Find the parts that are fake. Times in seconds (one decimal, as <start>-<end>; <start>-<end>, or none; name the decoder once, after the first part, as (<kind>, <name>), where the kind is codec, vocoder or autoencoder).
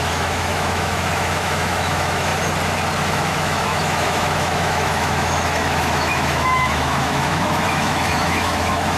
0.0-2.3 (autoencoder, DAC-VAE); 3.1-9.0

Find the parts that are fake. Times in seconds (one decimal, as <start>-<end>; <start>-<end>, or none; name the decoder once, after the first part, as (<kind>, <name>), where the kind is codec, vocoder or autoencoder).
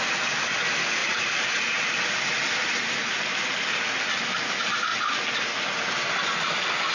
1.0-1.9 (vocoder, BigVGAN v2)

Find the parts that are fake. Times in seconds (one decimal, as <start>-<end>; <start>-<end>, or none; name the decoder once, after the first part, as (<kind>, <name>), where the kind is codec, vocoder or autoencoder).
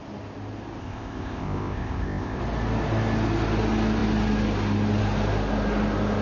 0.8-2.4 (codec, ZipCodec)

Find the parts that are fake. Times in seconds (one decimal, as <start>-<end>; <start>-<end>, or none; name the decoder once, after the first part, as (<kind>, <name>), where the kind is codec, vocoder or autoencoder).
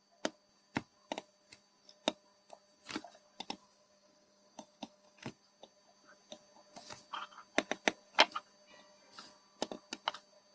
3.6-5.3 (codec, DAC)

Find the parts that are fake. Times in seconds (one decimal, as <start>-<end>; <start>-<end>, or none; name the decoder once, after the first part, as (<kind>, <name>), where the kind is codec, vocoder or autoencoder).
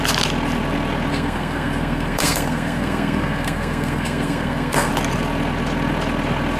1.1-4.9 (codec, SNAC)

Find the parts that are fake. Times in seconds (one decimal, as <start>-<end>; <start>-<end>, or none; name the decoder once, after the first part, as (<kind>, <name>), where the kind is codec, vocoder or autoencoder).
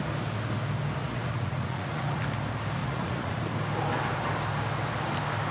1.0-2.2 (vocoder, Vocos); 2.8-3.4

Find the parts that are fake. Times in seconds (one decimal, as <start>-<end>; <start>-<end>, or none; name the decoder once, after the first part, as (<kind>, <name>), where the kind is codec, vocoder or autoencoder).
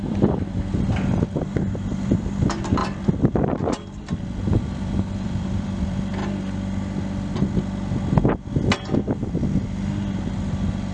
0.0-6.2 (vocoder, BigVGAN v2); 10.5-10.9